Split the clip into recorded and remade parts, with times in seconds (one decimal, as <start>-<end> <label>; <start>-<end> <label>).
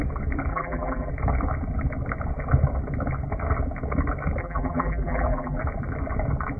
0.0-0.5 recorded; 0.5-1.1 remade; 1.1-4.4 recorded; 4.4-5.6 remade; 5.6-6.6 recorded